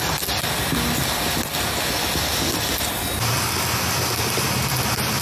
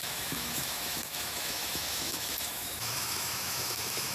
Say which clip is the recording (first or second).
first